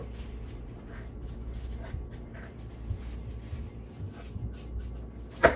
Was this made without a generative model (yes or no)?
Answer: yes